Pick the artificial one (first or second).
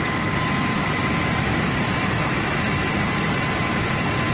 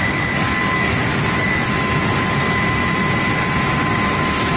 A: first